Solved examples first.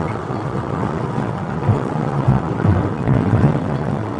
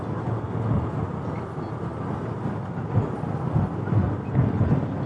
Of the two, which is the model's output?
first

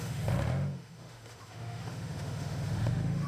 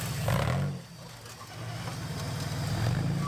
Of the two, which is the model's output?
first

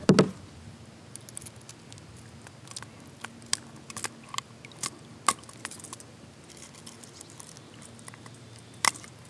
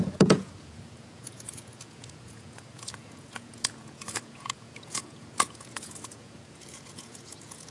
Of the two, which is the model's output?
second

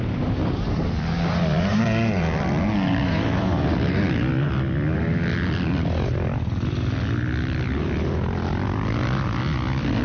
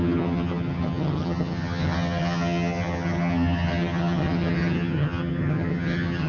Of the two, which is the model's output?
second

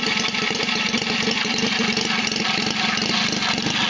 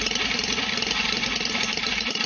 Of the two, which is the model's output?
second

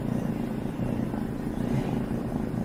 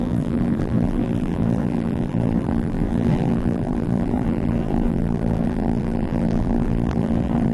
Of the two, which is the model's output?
second